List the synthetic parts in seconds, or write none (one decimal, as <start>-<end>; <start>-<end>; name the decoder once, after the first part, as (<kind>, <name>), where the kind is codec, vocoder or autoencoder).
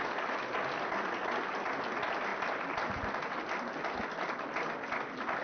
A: none